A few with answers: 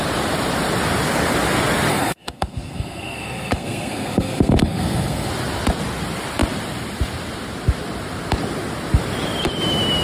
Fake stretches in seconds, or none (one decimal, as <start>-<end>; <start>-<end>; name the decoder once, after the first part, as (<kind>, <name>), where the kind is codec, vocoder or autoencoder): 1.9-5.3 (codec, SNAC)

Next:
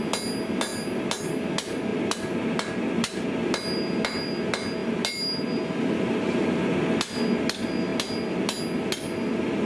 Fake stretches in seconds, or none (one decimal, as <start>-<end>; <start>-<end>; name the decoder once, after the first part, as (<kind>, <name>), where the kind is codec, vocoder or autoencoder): none

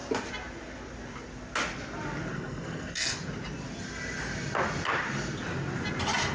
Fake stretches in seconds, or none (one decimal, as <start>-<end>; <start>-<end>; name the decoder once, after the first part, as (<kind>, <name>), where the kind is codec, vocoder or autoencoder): 2.3-3.2 (codec, SNAC)